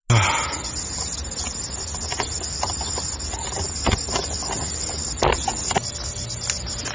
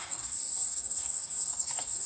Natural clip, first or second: first